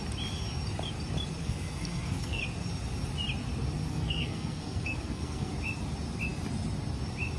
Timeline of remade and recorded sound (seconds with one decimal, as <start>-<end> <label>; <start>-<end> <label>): 0.0-1.4 recorded; 1.4-2.4 remade; 2.4-3.9 recorded; 3.9-5.5 remade; 5.5-7.4 recorded